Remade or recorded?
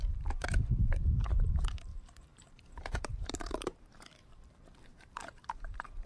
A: remade